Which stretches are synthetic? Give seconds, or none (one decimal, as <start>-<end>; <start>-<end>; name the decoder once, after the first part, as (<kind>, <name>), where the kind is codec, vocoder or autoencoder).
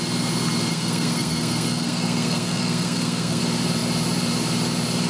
0.7-3.4 (codec, SNAC)